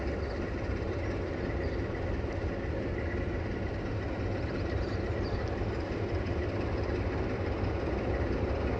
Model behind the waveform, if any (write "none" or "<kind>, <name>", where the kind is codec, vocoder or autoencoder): none